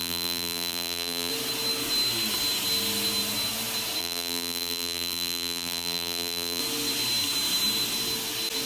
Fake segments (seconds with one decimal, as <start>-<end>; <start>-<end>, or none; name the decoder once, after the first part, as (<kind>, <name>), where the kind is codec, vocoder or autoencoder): 0.0-1.3 (vocoder, BigVGAN v2); 4.0-6.6